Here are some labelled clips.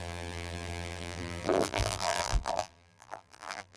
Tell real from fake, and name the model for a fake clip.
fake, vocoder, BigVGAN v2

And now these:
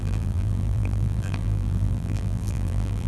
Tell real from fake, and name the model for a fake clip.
fake, vocoder, BigVGAN v2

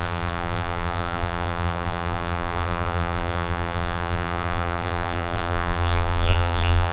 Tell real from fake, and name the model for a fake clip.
fake, vocoder, BigVGAN v2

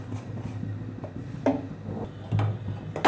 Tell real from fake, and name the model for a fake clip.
real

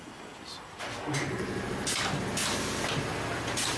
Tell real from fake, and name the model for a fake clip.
real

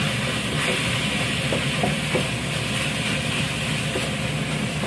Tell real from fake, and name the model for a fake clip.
real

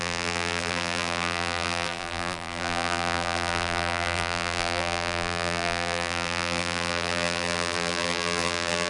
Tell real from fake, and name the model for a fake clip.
fake, vocoder, BigVGAN v2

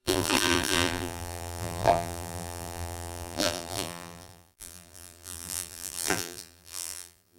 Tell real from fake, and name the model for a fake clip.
fake, vocoder, BigVGAN v2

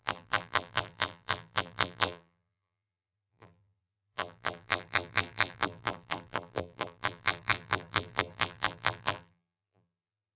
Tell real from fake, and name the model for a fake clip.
fake, vocoder, BigVGAN v2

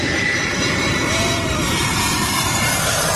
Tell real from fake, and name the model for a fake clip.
fake, vocoder, BigVGAN v2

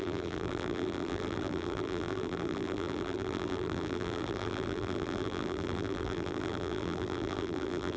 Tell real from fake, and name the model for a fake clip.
fake, vocoder, BigVGAN v2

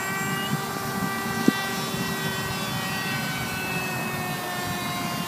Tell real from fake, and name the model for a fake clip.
real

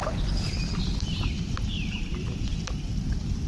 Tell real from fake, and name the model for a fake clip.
fake, vocoder, BigVGAN v2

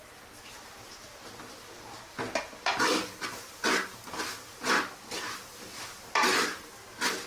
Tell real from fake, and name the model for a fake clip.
real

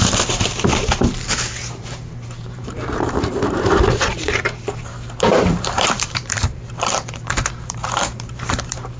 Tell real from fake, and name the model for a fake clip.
fake, vocoder, BigVGAN v2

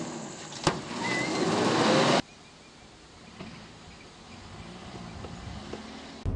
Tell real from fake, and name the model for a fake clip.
real